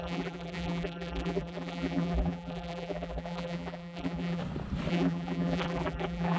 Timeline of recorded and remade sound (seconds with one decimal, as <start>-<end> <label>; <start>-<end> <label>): 0.0-4.4 remade; 4.4-4.9 recorded; 4.9-6.4 remade